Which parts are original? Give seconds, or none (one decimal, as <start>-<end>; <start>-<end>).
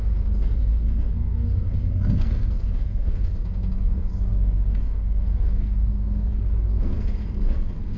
none